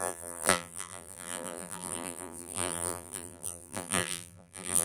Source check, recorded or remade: remade